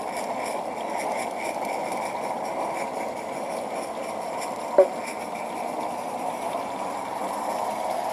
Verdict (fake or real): real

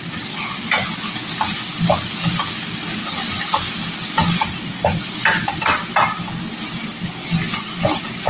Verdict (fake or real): real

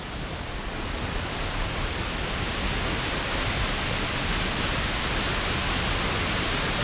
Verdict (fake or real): real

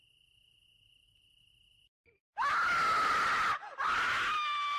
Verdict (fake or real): real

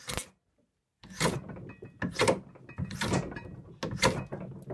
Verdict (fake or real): real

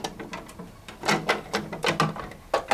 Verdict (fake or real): real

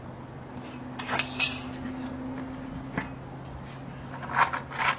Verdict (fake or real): real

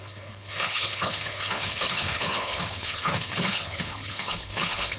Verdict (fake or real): fake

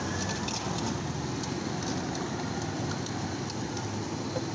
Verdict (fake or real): real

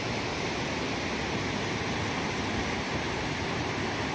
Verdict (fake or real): fake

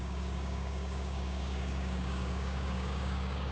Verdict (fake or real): fake